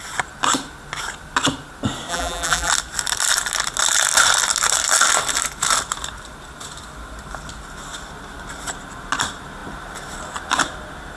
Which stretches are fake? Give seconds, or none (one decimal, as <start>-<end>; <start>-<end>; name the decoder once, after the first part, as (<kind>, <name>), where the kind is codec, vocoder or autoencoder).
2.1-2.7 (vocoder, BigVGAN v2)